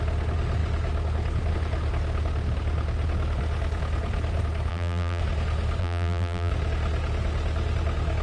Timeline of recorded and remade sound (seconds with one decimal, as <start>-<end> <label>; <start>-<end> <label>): 0.0-4.7 recorded; 4.7-5.2 remade; 5.2-5.8 recorded; 5.8-6.5 remade; 6.5-8.2 recorded